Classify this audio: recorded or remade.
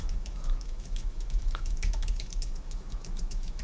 remade